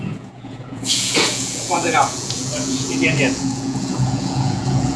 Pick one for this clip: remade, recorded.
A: remade